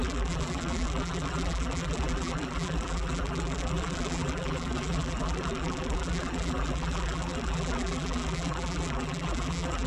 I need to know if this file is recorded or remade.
remade